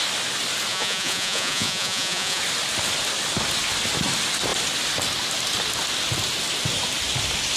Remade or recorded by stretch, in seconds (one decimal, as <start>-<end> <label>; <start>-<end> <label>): 0.0-0.7 recorded; 0.7-2.4 remade; 2.4-7.6 recorded